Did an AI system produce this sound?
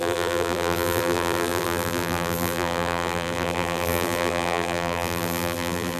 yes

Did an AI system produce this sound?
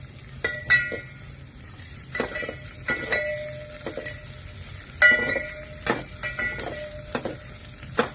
no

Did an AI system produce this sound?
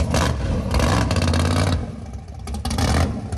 no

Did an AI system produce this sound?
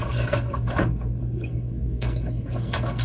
yes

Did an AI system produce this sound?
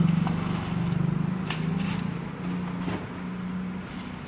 no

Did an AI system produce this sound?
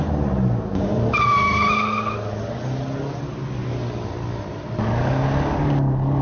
no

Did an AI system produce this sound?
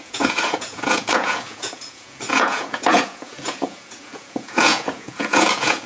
yes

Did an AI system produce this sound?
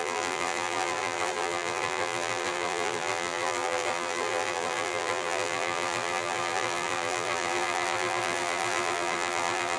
yes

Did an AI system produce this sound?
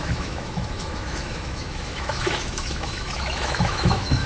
yes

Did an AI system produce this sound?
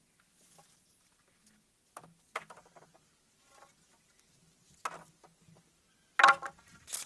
no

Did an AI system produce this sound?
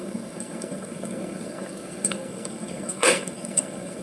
yes